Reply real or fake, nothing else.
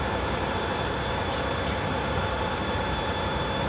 fake